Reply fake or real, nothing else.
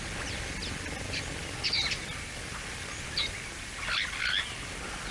real